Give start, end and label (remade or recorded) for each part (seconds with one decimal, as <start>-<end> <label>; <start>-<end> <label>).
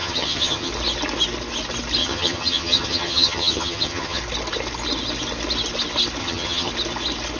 0.0-0.7 remade; 0.7-2.0 recorded; 2.0-4.2 remade; 4.2-6.2 recorded; 6.2-6.7 remade; 6.7-7.4 recorded